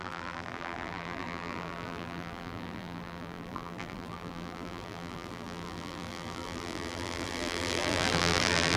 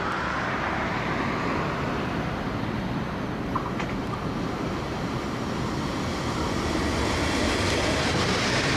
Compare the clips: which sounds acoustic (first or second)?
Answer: second